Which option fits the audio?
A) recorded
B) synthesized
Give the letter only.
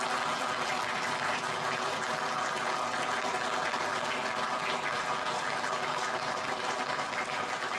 A